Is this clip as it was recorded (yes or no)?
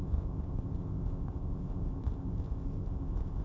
no